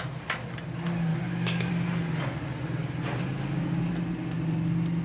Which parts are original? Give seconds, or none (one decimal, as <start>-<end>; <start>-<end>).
0.0-1.1; 1.7-5.0